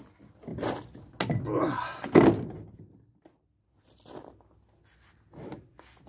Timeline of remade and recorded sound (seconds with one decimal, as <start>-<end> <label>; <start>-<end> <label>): 0.0-6.1 recorded